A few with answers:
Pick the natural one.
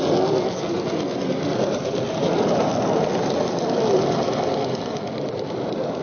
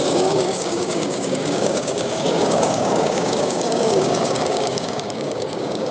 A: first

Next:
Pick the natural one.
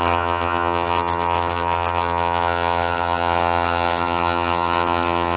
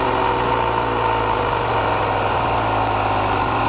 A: second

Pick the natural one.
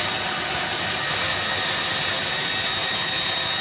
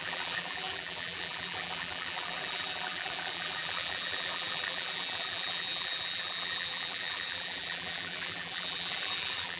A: first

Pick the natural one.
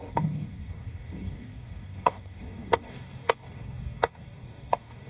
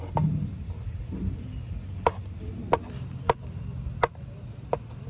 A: second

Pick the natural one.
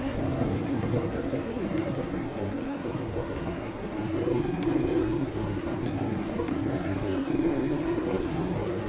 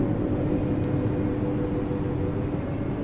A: second